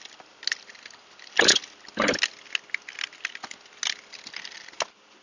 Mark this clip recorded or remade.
recorded